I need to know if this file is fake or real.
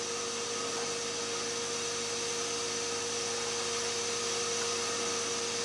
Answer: real